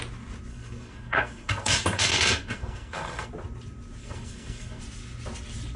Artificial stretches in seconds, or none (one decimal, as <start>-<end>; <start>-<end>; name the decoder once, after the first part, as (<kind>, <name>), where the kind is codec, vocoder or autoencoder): 0.5-3.3 (codec, SNAC); 4.0-4.8